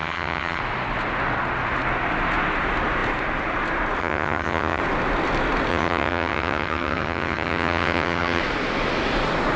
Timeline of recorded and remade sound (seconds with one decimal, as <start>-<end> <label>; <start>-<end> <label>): 0.0-0.6 remade; 0.6-4.0 recorded; 4.0-4.8 remade; 4.8-5.7 recorded; 5.7-8.4 remade; 8.4-9.6 recorded